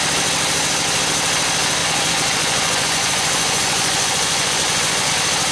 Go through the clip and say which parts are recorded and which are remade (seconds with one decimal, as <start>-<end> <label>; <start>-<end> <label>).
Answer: 0.0-1.8 recorded; 1.8-5.1 remade; 5.1-5.5 recorded